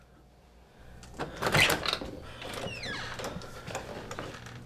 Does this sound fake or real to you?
real